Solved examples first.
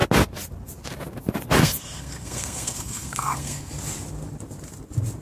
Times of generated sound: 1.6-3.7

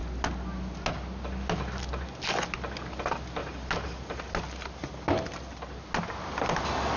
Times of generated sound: none